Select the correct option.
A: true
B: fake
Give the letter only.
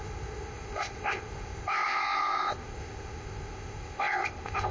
B